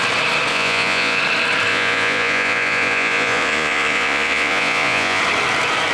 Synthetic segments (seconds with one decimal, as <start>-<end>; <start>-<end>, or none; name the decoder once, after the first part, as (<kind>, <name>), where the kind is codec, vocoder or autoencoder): 0.5-1.2 (vocoder, Vocos); 1.7-5.2